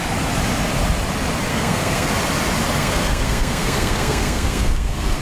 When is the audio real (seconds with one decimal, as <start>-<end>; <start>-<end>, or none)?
0.0-1.5; 2.1-2.8